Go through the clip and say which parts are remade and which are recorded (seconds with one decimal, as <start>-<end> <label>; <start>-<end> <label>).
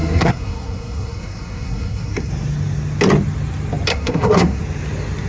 0.0-2.3 remade; 2.3-3.9 recorded; 3.9-4.6 remade; 4.6-5.3 recorded